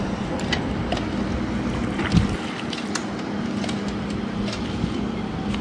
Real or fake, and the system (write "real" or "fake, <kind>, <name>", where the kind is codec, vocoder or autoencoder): real